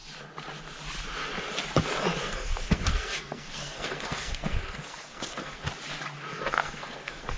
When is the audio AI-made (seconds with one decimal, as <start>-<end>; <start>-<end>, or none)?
2.2-5.6; 6.3-7.4

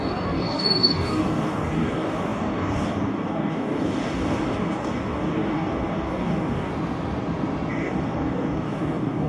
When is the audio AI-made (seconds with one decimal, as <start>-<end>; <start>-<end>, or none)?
0.0-6.7; 7.7-9.3

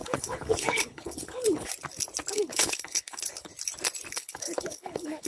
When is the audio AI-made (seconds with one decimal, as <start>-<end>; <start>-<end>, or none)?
0.0-1.7; 2.3-3.5; 4.1-5.3

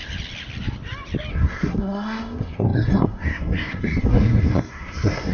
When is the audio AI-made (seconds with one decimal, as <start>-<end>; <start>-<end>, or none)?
1.3-5.3